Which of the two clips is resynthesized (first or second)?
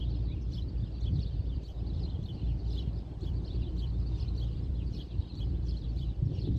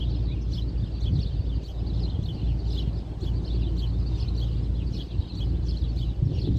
first